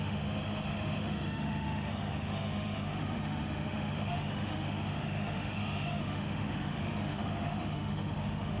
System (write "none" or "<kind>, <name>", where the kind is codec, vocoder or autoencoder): autoencoder, DAC-VAE